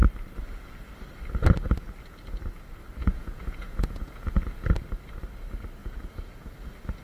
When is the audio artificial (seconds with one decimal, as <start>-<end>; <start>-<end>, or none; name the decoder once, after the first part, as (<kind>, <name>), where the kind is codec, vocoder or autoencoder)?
3.0-4.7 (vocoder, Vocos); 5.8-6.5